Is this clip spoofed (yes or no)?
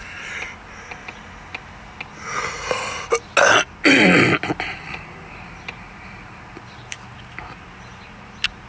no